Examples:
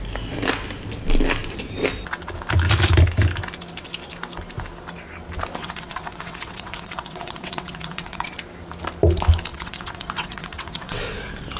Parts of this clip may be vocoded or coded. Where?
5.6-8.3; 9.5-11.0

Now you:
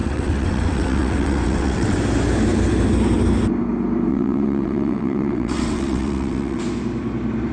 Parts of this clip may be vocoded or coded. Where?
0.0-2.0; 4.1-6.6